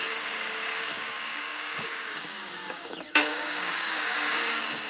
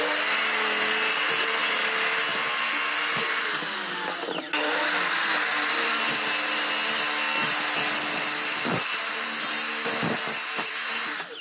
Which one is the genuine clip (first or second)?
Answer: second